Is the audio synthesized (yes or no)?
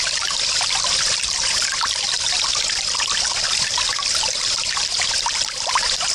no